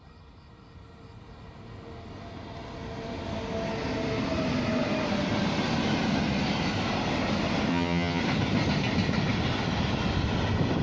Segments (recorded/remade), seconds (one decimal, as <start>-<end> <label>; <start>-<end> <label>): 0.0-7.7 recorded; 7.7-8.2 remade; 8.2-10.8 recorded